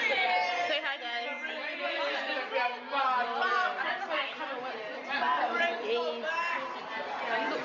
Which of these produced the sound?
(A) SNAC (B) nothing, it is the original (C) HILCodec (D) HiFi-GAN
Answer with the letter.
B